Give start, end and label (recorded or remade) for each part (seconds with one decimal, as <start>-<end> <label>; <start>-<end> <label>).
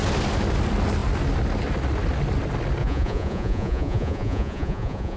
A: 0.0-2.8 recorded; 2.8-5.2 remade